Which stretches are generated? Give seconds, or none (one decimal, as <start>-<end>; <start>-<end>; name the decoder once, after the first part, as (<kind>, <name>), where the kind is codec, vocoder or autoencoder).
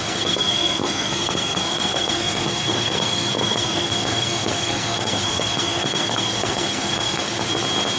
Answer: 0.0-7.3 (codec, SNAC)